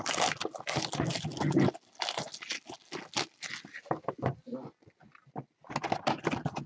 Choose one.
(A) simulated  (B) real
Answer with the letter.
B